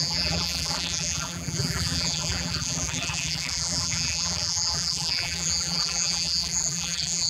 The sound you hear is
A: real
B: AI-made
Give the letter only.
B